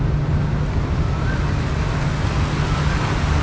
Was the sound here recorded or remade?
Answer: recorded